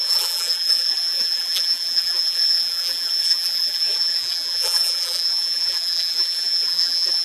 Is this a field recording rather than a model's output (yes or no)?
no